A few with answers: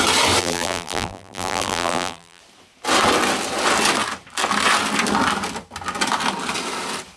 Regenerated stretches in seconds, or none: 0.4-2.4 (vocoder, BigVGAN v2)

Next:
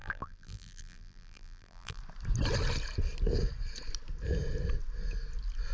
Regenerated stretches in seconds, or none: 0.0-2.0 (vocoder, BigVGAN v2)

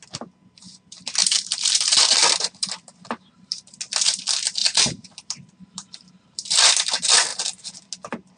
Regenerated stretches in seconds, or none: 1.2-3.7 (vocoder, BigVGAN v2); 4.6-6.7

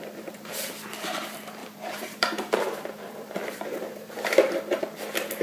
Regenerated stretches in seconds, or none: 1.6-4.8 (vocoder, BigVGAN v2)

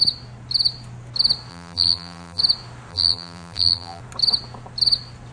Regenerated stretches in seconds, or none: 1.5-2.4 (vocoder, BigVGAN v2); 2.9-4.0

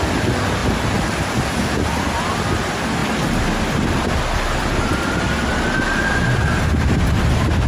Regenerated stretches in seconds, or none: 0.6-1.6 (vocoder, BigVGAN v2); 3.0-7.7

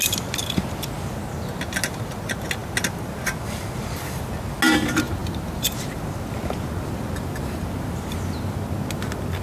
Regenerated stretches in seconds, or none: none

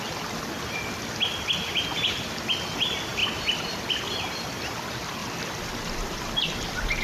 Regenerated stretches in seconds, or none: none